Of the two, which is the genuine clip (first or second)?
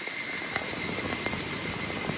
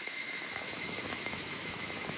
first